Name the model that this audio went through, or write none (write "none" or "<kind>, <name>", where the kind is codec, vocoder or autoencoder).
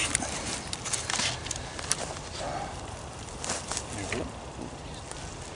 none